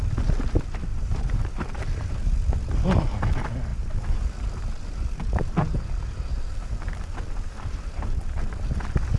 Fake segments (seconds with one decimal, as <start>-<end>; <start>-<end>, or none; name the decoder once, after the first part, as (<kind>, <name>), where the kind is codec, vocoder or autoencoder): 0.9-1.5 (vocoder, BigVGAN v2); 6.3-8.6